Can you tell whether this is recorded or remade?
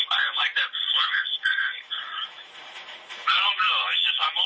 remade